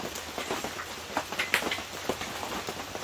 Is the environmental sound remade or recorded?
recorded